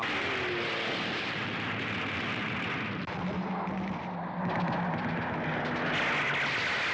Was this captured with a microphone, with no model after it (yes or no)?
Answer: yes